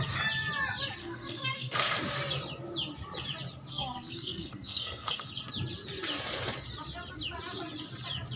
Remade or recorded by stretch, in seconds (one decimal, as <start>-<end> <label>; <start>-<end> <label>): 0.0-1.0 recorded; 1.0-2.0 remade; 2.0-3.7 recorded; 3.7-5.3 remade; 5.3-8.4 recorded